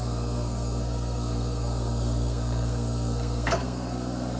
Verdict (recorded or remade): remade